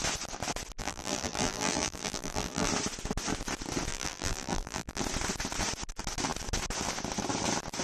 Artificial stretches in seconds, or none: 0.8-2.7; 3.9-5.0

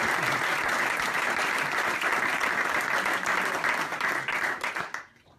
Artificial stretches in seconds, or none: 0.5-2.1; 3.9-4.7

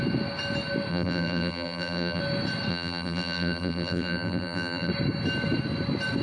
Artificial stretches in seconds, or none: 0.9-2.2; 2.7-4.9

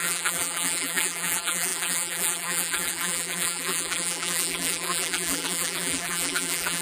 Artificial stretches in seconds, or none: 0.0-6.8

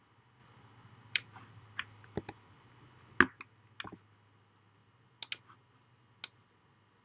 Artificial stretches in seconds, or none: 0.4-3.2

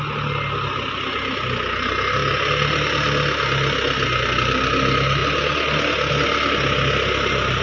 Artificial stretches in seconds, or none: none

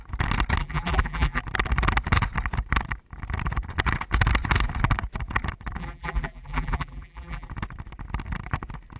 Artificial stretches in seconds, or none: 0.6-1.4; 5.8-7.5